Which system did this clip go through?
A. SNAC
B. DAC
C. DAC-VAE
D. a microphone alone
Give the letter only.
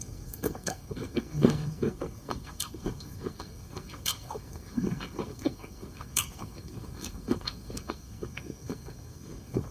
A